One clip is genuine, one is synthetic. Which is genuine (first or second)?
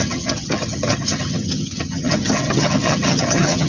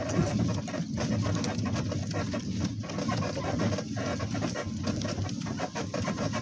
second